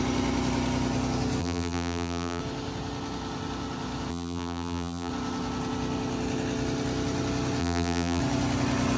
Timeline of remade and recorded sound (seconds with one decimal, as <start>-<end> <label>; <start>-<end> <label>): 0.0-1.4 recorded; 1.4-2.4 remade; 2.4-4.1 recorded; 4.1-5.1 remade; 5.1-7.6 recorded; 7.6-8.2 remade; 8.2-9.0 recorded